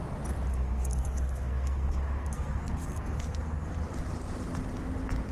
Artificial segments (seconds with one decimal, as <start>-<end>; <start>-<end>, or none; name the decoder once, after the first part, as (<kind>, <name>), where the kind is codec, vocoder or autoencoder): 0.5-3.7 (codec, SNAC)